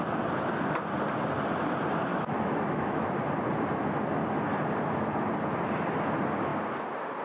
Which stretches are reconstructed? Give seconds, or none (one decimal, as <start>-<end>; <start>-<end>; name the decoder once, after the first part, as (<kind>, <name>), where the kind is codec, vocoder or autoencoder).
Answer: 2.1-3.1 (autoencoder, DAC-VAE)